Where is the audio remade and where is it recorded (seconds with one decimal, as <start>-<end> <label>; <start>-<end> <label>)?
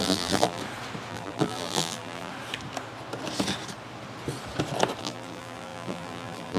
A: 0.0-0.6 remade; 0.6-1.1 recorded; 1.1-2.3 remade; 2.3-5.0 recorded; 5.0-6.6 remade